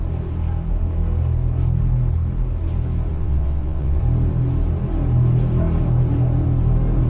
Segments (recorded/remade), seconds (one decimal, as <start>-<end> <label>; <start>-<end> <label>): 0.0-3.1 recorded; 3.1-4.0 remade; 4.0-7.1 recorded